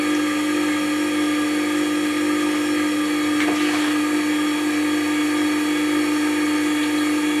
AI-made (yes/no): no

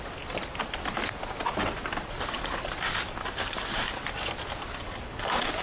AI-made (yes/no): no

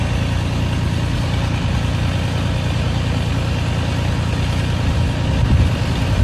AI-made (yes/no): no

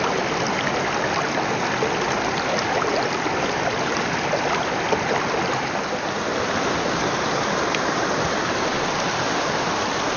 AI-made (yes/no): no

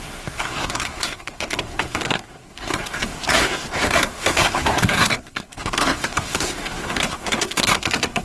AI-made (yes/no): yes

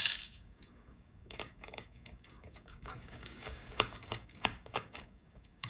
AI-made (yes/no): yes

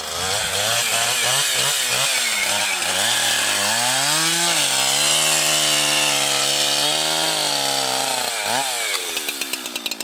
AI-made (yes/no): no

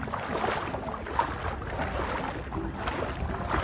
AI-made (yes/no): no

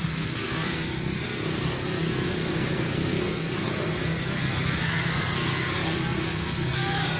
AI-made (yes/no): yes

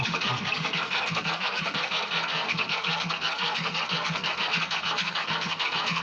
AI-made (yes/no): yes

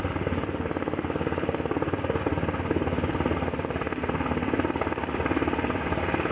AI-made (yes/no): yes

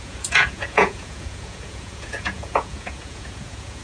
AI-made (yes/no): yes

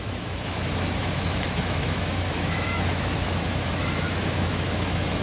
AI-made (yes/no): yes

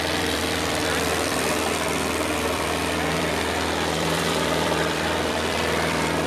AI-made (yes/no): yes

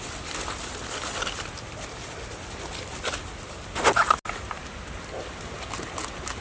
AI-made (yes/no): no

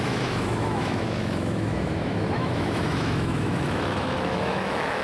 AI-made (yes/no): yes